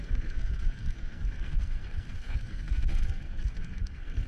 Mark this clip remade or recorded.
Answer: remade